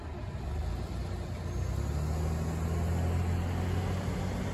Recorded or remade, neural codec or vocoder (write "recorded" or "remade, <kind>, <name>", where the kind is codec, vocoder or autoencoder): recorded